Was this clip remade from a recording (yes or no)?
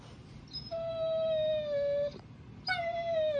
no